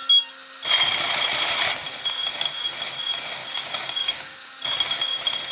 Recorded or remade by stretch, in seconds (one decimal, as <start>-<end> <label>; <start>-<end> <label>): 0.0-3.4 recorded; 3.4-4.5 remade; 4.5-5.5 recorded